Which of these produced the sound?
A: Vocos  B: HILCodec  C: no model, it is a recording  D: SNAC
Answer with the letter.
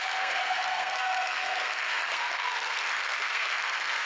D